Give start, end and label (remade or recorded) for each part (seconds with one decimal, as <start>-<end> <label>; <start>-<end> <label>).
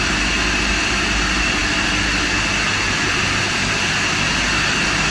0.0-5.1 recorded